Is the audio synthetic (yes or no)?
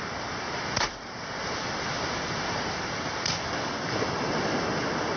no